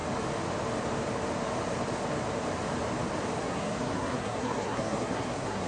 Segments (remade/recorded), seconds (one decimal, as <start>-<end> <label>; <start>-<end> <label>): 0.0-3.4 recorded; 3.4-5.7 remade